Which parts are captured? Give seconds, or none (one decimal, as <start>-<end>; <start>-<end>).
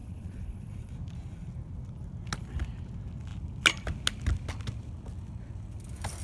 0.9-6.2